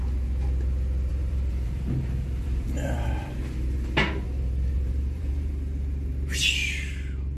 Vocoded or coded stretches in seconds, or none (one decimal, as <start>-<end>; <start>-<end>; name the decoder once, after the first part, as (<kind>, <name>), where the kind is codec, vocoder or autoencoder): 1.1-5.5 (vocoder, BigVGAN v2)